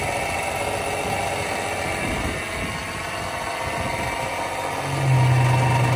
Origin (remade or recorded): recorded